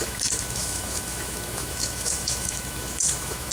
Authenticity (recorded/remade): remade